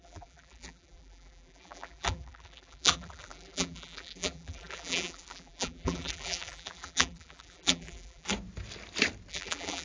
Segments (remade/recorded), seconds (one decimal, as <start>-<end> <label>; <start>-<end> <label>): 0.0-8.3 remade; 8.3-9.3 recorded; 9.3-9.8 remade

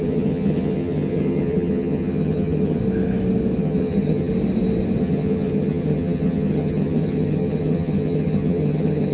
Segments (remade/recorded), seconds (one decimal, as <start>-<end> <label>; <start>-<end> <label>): 0.0-2.8 remade; 2.8-3.6 recorded; 3.6-4.3 remade; 4.3-5.0 recorded; 5.0-9.1 remade

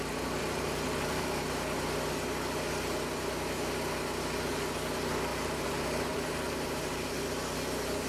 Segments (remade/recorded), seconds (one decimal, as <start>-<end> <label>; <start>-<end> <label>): 0.0-0.4 recorded; 0.4-1.4 remade; 1.4-5.3 recorded; 5.3-7.2 remade; 7.2-8.1 recorded

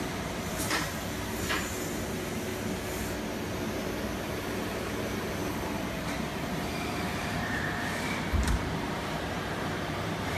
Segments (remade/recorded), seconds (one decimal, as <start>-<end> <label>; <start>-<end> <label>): 0.0-2.5 remade; 2.5-3.3 recorded; 3.3-10.4 remade